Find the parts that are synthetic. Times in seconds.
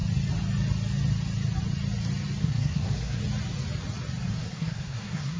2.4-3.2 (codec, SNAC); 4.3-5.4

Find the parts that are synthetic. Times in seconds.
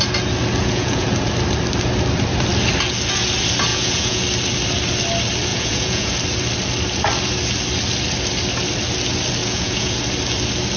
0.6-1.1 (vocoder, Vocos); 3.7-4.2; 5.5-6.1; 9.4-10.0